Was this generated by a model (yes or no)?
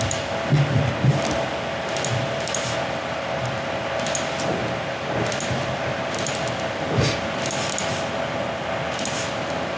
no